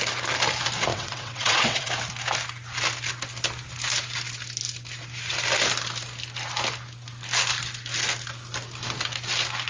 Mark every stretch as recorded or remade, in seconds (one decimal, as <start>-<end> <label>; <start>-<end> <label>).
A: 0.0-0.9 recorded; 0.9-1.9 remade; 1.9-9.7 recorded